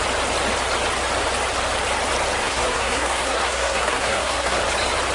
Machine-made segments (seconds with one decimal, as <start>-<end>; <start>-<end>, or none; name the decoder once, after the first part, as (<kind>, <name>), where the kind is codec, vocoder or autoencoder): 2.4-4.6 (codec, SNAC)